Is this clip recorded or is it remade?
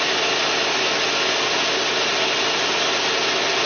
recorded